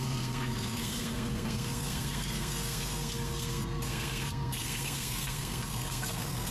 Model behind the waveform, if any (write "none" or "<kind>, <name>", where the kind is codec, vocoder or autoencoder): codec, SNAC